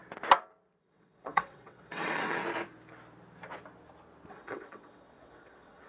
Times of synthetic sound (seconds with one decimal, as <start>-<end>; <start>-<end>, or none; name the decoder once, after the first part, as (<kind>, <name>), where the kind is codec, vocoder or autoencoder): 0.8-2.4 (vocoder, WaveNeXt); 4.3-5.9